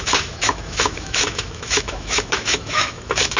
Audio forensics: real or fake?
fake